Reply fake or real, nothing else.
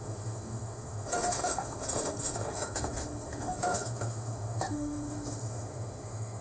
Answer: fake